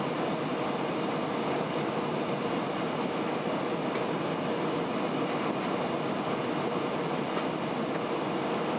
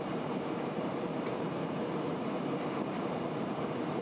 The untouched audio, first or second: first